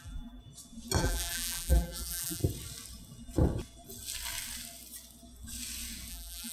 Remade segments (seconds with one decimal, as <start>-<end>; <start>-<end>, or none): 0.0-0.4; 1.0-2.4; 6.1-6.5